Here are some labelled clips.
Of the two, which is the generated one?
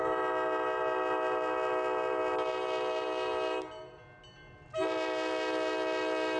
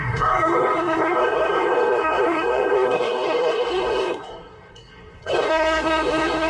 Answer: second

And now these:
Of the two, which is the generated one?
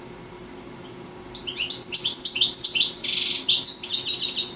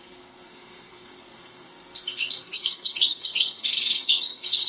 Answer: second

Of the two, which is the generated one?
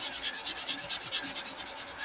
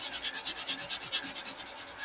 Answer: first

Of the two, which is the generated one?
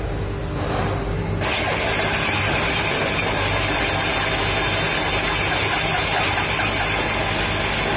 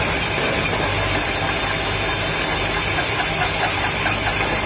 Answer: second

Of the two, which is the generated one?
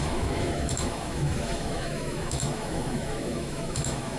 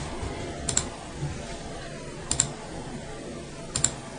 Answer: first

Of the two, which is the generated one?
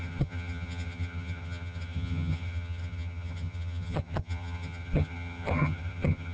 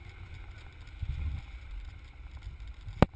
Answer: first